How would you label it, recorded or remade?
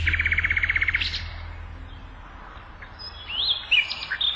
recorded